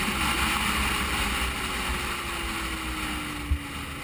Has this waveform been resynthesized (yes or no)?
no